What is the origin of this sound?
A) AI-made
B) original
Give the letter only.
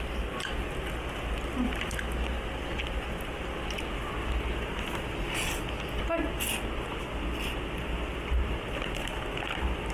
B